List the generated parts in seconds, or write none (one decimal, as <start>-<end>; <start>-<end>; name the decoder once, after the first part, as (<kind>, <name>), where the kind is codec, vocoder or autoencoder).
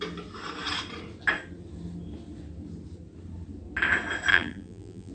4.3-5.1 (vocoder, BigVGAN v2)